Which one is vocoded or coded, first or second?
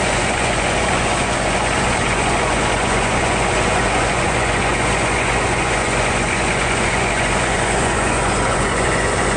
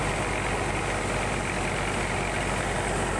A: first